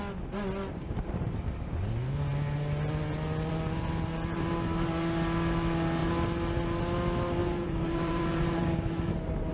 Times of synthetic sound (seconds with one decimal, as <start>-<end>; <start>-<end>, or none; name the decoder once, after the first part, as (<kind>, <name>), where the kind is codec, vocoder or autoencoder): 0.7-1.4 (vocoder, BigVGAN v2); 7.4-9.5